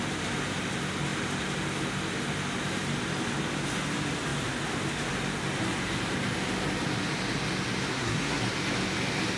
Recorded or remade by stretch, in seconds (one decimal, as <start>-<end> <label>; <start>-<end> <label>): 0.0-7.9 recorded; 7.9-8.4 remade; 8.4-9.4 recorded